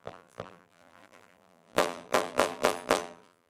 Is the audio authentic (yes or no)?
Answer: no